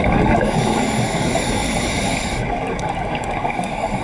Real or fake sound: fake